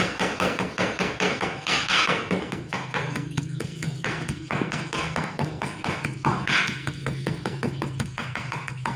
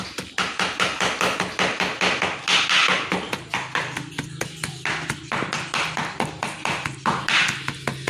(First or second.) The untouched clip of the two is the second